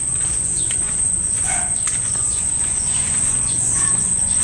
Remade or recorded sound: remade